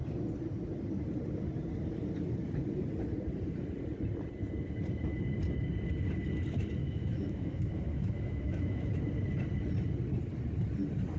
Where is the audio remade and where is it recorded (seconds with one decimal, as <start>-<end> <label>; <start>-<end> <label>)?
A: 0.0-6.8 recorded; 6.8-9.0 remade; 9.0-11.2 recorded